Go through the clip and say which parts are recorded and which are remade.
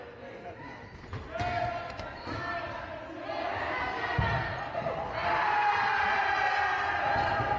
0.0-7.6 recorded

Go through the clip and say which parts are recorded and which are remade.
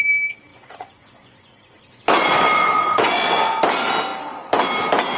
0.0-0.5 recorded; 0.5-3.6 remade; 3.6-5.2 recorded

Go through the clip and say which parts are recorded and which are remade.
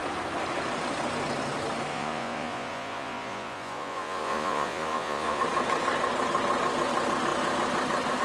0.0-1.9 recorded; 1.9-5.4 remade; 5.4-8.2 recorded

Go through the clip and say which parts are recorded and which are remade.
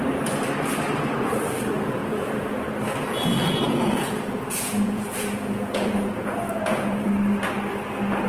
0.0-2.0 recorded; 2.0-2.7 remade; 2.7-3.3 recorded; 3.3-7.1 remade; 7.1-8.3 recorded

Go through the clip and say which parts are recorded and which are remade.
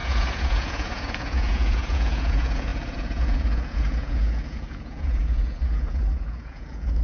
0.0-7.0 remade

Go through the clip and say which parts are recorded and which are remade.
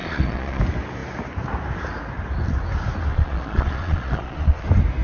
0.0-0.6 remade; 0.6-3.1 recorded; 3.1-4.6 remade; 4.6-5.0 recorded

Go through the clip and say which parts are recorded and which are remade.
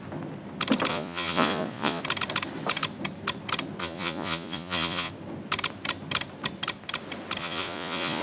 0.0-0.9 recorded; 0.9-2.0 remade; 2.0-3.8 recorded; 3.8-5.1 remade; 5.1-7.4 recorded; 7.4-8.2 remade